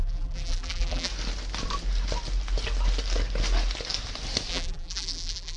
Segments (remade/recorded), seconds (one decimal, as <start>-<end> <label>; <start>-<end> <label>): 0.0-1.1 remade; 1.1-4.5 recorded; 4.5-5.6 remade